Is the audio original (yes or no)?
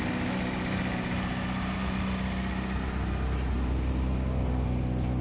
yes